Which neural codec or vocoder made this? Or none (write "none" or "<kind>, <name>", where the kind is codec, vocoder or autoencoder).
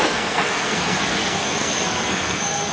codec, SNAC